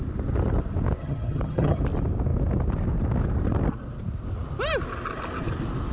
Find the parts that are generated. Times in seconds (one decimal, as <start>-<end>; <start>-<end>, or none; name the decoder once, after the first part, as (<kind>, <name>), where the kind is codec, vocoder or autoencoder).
1.0-1.8 (vocoder, HiFi-GAN)